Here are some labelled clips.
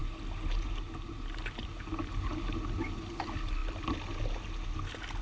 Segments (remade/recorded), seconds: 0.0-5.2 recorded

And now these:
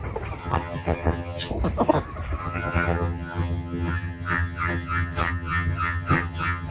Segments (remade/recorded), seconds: 0.0-0.4 recorded; 0.4-1.5 remade; 1.5-2.4 recorded; 2.4-6.7 remade

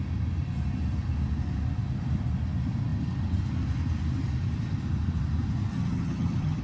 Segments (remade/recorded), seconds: 0.0-5.7 recorded; 5.7-6.6 remade

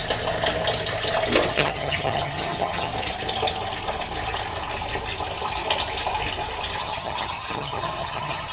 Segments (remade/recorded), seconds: 0.0-1.5 recorded; 1.5-2.9 remade; 2.9-6.8 recorded; 6.8-8.5 remade

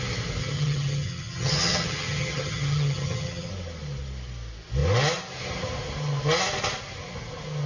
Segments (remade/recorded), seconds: 0.0-0.4 recorded; 0.4-3.5 remade; 3.5-7.7 recorded

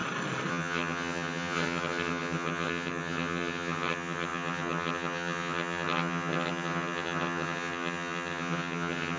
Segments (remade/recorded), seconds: 0.0-0.5 recorded; 0.5-9.2 remade

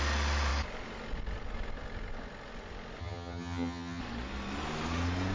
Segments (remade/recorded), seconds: 0.0-3.0 recorded; 3.0-4.0 remade; 4.0-5.3 recorded